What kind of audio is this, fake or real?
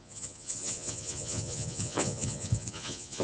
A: fake